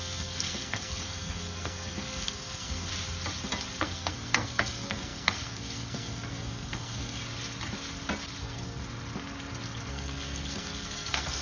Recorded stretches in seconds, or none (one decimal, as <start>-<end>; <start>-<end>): 2.9-3.8; 7.2-8.4; 8.8-9.9